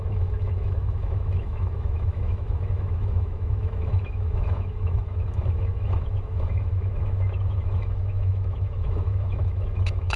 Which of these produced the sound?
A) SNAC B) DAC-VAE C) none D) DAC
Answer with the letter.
B